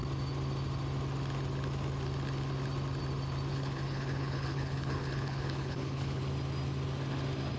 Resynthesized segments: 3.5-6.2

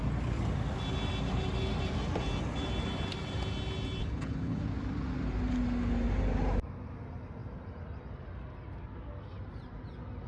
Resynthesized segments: 4.0-4.6

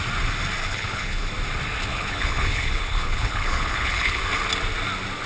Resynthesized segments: 0.6-1.3; 1.9-4.2

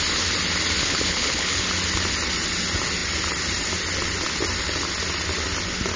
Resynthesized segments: 0.8-1.6